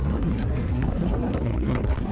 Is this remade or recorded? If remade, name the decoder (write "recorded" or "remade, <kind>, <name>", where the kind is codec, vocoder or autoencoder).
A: remade, codec, SNAC